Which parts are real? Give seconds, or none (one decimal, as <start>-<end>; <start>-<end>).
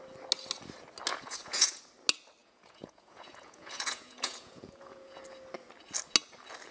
0.0-1.1; 1.8-2.4; 5.2-6.7